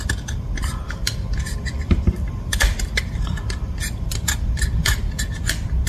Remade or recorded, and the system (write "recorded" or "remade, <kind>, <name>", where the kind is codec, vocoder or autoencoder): remade, vocoder, BigVGAN v2